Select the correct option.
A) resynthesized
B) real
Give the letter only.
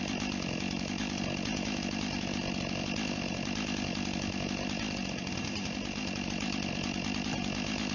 A